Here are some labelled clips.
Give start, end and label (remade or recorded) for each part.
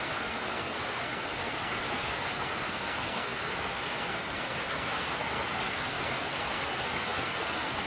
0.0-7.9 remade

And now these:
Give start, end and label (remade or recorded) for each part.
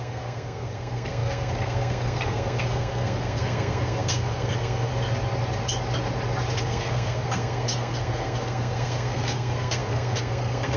0.0-4.9 remade; 4.9-6.6 recorded; 6.6-10.8 remade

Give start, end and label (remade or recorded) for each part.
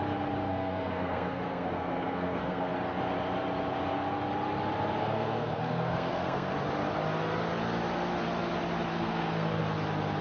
0.0-0.4 recorded; 0.4-2.7 remade; 2.7-5.0 recorded; 5.0-6.5 remade; 6.5-8.9 recorded; 8.9-9.6 remade; 9.6-10.2 recorded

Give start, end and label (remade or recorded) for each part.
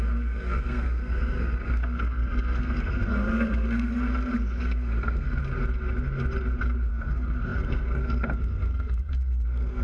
0.0-3.9 remade; 3.9-4.6 recorded; 4.6-5.4 remade; 5.4-6.9 recorded; 6.9-9.8 remade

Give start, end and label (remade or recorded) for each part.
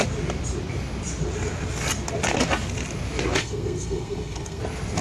0.0-3.4 recorded; 3.4-4.6 remade; 4.6-5.0 recorded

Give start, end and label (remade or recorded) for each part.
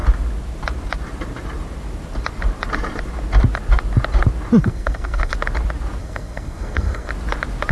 0.0-4.6 recorded; 4.6-5.3 remade; 5.3-6.0 recorded; 6.0-7.1 remade; 7.1-7.7 recorded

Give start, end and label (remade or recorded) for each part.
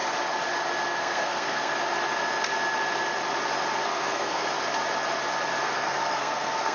0.0-1.0 recorded; 1.0-1.7 remade; 1.7-3.8 recorded; 3.8-4.5 remade; 4.5-5.6 recorded; 5.6-6.7 remade